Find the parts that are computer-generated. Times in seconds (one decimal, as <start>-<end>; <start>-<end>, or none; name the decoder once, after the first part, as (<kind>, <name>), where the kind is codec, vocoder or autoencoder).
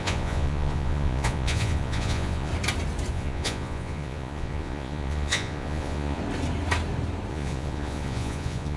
0.0-2.5 (vocoder, Vocos); 3.1-6.2; 7.3-8.8